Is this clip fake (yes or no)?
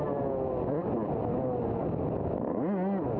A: no